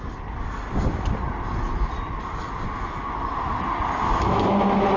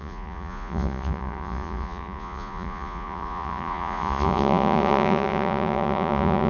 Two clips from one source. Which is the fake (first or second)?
second